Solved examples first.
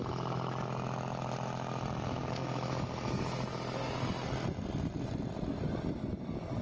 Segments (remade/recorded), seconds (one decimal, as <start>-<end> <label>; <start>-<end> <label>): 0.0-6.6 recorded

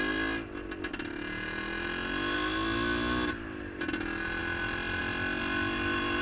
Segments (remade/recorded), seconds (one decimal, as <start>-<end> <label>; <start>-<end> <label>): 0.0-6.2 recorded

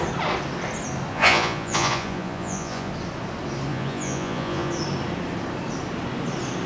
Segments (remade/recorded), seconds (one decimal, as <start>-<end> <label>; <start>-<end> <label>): 0.0-1.1 recorded; 1.1-2.9 remade; 2.9-3.7 recorded; 3.7-4.7 remade; 4.7-6.7 recorded